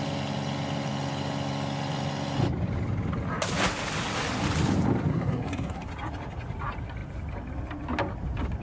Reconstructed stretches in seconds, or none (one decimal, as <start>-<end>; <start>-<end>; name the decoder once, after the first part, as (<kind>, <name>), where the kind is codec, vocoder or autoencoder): 5.1-5.9 (codec, SNAC)